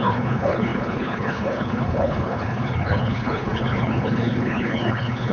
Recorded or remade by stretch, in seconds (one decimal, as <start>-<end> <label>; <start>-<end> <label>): 0.0-5.3 remade

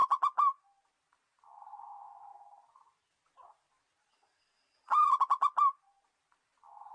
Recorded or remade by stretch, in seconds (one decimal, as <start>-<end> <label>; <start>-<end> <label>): 0.0-6.9 recorded

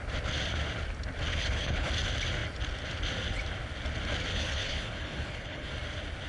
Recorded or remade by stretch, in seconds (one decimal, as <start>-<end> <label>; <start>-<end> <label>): 0.0-1.3 recorded; 1.3-1.9 remade; 1.9-4.3 recorded; 4.3-5.7 remade; 5.7-6.3 recorded

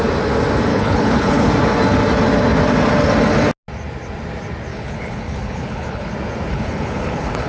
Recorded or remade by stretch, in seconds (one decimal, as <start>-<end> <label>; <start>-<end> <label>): 0.0-0.7 recorded; 0.7-1.5 remade; 1.5-4.7 recorded; 4.7-6.1 remade; 6.1-6.5 recorded; 6.5-7.5 remade

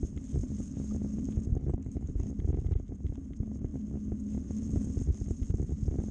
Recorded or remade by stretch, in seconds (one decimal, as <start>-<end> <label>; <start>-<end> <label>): 0.0-1.5 recorded; 1.5-2.1 remade; 2.1-6.1 recorded